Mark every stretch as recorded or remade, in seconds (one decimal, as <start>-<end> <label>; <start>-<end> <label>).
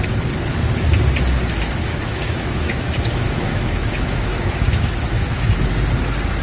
0.0-1.9 recorded; 1.9-5.7 remade; 5.7-6.4 recorded